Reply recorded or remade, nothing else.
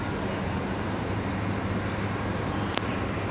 recorded